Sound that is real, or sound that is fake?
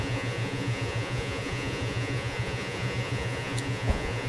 fake